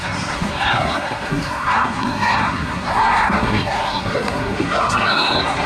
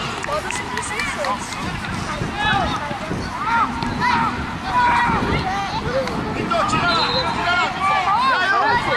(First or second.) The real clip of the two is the second